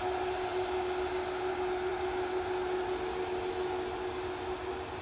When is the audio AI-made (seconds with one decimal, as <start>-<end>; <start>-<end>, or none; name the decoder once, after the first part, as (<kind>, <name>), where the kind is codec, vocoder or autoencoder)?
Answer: none